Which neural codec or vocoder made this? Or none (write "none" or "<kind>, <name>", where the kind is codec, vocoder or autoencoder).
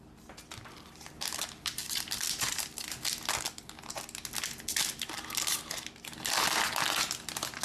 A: none